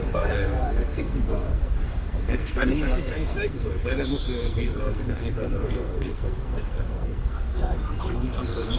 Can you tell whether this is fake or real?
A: fake